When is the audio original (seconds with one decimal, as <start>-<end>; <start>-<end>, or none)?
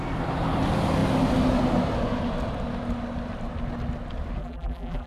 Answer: 0.0-4.4